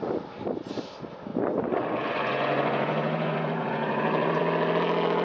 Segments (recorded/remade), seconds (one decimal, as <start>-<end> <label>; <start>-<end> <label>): 0.0-1.3 recorded; 1.3-4.4 remade; 4.4-5.2 recorded